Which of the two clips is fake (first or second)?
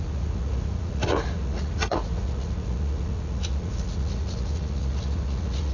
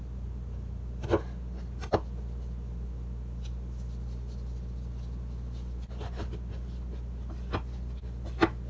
first